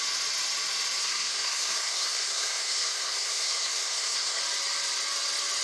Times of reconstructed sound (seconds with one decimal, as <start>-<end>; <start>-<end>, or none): 1.0-4.4